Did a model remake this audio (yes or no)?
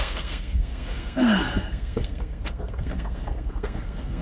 yes